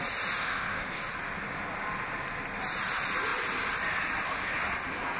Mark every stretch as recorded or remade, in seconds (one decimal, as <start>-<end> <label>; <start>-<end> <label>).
0.0-0.4 recorded; 0.4-1.0 remade; 1.0-5.2 recorded